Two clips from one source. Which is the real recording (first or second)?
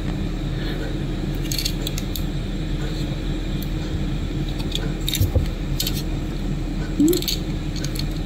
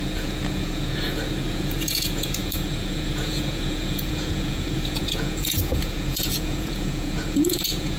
first